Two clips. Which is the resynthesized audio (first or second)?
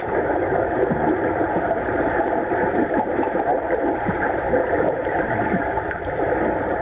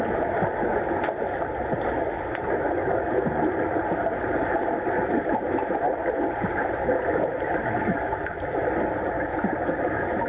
first